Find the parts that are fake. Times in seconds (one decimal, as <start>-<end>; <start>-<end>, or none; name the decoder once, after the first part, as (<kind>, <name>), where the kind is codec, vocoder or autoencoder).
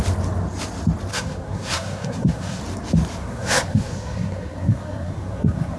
1.1-2.6 (codec, SNAC); 3.2-5.8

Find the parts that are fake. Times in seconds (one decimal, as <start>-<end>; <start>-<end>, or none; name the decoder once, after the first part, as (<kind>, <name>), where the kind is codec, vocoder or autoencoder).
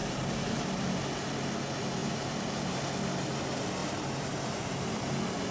0.0-0.8 (vocoder, BigVGAN v2); 2.0-2.6; 3.8-5.1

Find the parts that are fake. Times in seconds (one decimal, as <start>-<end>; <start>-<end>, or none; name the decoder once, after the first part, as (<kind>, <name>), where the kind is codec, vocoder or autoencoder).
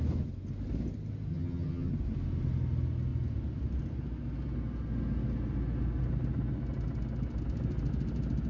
1.3-1.9 (vocoder, HiFi-GAN)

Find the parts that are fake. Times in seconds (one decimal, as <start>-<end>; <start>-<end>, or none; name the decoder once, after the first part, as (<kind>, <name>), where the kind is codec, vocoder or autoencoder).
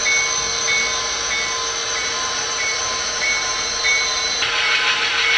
1.8-5.0 (vocoder, BigVGAN v2)